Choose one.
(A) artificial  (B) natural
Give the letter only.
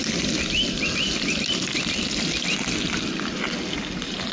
B